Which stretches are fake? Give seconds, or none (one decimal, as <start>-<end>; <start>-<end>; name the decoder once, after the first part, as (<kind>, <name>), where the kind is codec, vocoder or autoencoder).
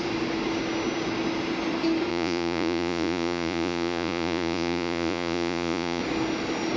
2.1-6.0 (vocoder, Vocos)